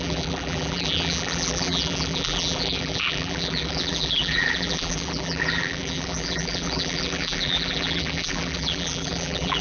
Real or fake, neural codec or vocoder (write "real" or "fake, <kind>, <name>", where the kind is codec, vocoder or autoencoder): fake, vocoder, BigVGAN v2